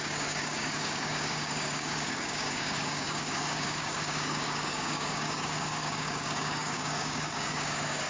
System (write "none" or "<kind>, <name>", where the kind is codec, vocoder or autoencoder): codec, DAC